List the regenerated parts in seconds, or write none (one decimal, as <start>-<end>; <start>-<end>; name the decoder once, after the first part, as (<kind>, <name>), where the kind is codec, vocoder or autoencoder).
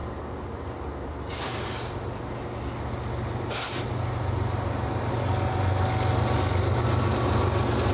none